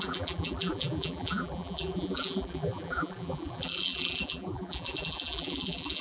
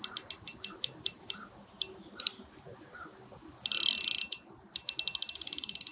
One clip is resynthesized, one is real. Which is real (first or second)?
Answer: second